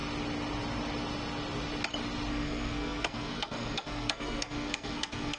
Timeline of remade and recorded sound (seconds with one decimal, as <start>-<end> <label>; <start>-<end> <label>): 0.0-2.3 recorded; 2.3-5.4 remade